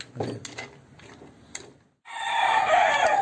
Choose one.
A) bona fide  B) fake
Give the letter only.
A